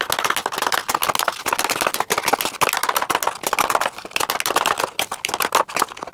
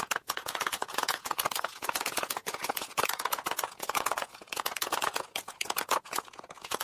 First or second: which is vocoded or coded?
second